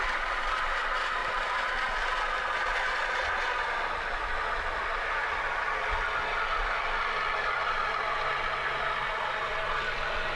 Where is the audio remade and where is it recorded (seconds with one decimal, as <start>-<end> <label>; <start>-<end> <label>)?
0.0-10.4 recorded

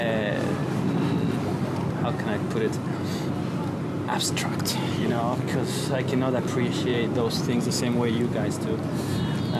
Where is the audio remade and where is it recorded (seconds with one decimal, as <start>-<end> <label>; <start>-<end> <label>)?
0.0-9.6 recorded

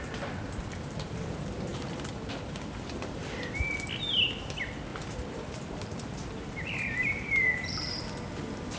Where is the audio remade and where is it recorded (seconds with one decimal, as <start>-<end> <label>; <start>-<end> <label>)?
0.0-1.7 recorded; 1.7-3.2 remade; 3.2-4.9 recorded; 4.9-7.9 remade; 7.9-8.8 recorded

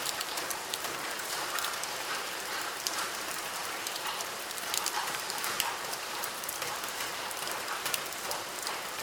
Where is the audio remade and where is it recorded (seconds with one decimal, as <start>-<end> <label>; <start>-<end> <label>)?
0.0-7.1 remade; 7.1-9.0 recorded

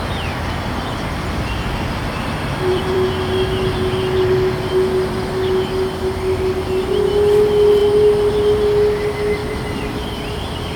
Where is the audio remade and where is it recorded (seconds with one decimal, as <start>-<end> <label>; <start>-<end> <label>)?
0.0-2.7 recorded; 2.7-3.2 remade; 3.2-9.4 recorded; 9.4-10.8 remade

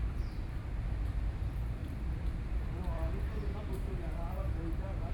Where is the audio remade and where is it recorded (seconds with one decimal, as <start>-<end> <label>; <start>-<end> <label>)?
0.0-1.8 recorded; 1.8-5.1 remade

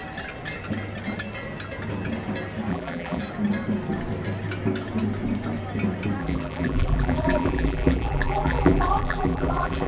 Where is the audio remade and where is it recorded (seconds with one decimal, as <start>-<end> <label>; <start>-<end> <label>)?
0.0-2.7 recorded; 2.7-3.2 remade; 3.2-6.2 recorded; 6.2-9.9 remade